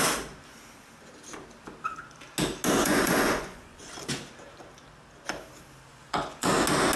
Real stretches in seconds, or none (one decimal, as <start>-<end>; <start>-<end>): 0.0-2.8; 3.9-5.9; 6.5-7.0